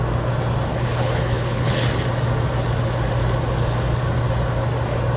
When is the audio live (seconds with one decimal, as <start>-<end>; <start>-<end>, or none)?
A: 0.0-0.7; 1.9-5.2